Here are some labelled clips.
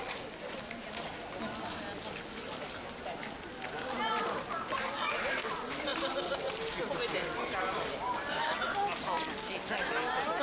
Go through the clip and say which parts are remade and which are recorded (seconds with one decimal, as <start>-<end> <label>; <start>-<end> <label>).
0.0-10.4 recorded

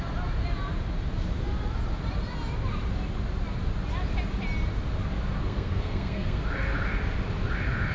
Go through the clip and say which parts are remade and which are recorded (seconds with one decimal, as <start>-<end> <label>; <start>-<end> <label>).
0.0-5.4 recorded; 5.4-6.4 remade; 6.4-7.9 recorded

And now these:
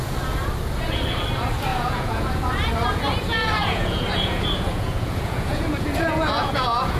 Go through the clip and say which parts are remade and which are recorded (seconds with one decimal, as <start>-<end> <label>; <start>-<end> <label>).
0.0-1.7 recorded; 1.7-2.5 remade; 2.5-3.6 recorded; 3.6-7.0 remade

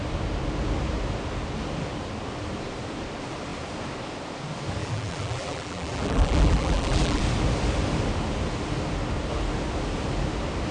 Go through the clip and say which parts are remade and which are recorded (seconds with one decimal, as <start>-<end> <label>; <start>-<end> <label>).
0.0-4.8 recorded; 4.8-7.2 remade; 7.2-10.7 recorded

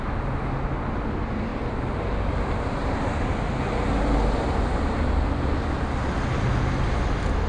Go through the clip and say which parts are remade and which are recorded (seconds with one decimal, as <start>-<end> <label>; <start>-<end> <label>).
0.0-7.5 recorded

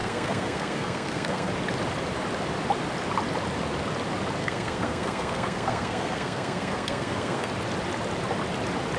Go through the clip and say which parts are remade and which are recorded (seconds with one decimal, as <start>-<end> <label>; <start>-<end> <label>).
0.0-1.5 remade; 1.5-4.4 recorded; 4.4-7.5 remade; 7.5-9.0 recorded